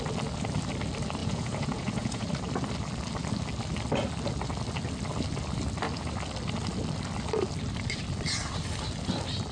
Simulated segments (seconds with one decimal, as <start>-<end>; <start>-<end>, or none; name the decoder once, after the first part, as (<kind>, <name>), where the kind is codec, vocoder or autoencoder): 1.2-2.3 (vocoder, Vocos)